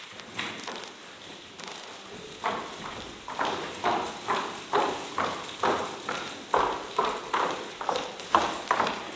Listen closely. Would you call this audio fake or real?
fake